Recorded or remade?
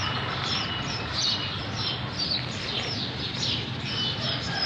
recorded